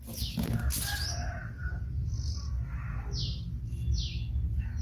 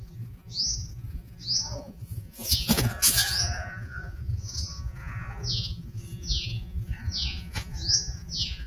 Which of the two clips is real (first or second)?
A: first